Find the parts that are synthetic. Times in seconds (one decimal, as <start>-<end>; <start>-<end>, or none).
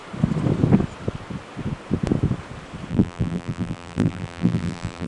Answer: 2.9-5.1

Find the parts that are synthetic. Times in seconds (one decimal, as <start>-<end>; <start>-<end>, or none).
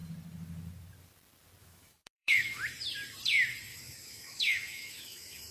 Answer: 1.6-2.6; 3.7-5.5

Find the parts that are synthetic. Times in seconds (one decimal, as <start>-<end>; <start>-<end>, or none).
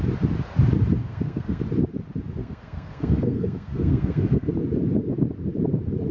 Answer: 1.0-1.6; 2.4-4.5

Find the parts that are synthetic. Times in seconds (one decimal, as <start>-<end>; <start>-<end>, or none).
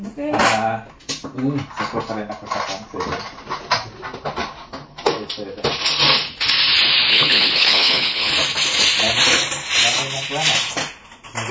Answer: 7.1-8.3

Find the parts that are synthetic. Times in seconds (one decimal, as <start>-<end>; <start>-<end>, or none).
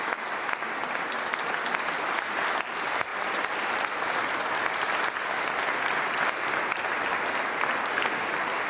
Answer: none